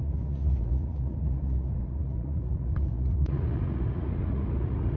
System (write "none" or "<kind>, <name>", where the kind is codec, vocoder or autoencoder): vocoder, Vocos